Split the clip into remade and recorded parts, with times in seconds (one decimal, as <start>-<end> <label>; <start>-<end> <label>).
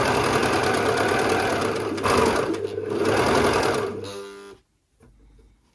0.0-5.7 recorded